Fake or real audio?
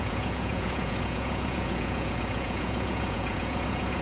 fake